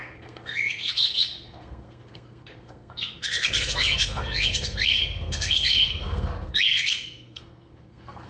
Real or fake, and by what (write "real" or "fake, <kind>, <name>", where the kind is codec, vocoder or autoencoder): fake, codec, SNAC